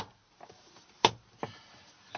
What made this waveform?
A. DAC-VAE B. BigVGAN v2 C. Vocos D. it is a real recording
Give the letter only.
D